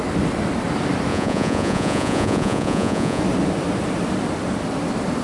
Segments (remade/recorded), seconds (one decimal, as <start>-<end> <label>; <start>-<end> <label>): 0.0-1.1 recorded; 1.1-3.2 remade; 3.2-5.2 recorded